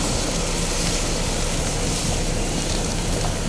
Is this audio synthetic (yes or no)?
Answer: no